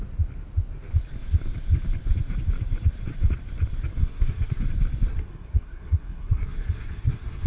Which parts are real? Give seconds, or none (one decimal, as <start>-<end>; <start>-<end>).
0.0-4.0; 4.6-5.1